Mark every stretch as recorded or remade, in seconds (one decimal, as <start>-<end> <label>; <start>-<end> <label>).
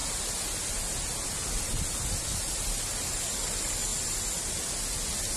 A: 0.0-5.4 recorded